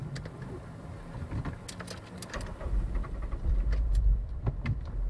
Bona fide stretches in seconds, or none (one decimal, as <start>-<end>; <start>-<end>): 0.0-2.1